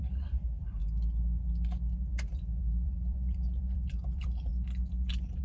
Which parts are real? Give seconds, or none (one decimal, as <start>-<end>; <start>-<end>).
0.8-2.6; 4.5-5.4